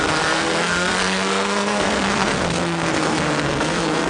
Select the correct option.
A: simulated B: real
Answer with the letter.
A